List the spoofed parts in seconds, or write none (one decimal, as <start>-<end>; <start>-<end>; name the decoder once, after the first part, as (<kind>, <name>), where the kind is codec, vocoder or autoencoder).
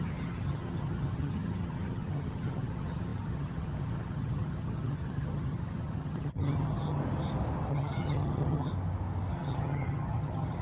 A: 0.0-7.0 (vocoder, HiFi-GAN); 7.7-8.7; 9.3-10.6